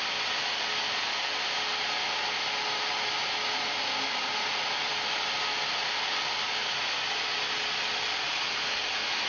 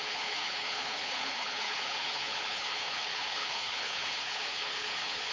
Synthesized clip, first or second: second